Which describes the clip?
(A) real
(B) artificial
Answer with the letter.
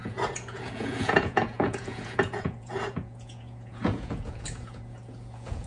B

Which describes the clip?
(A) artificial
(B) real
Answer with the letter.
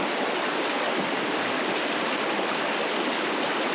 B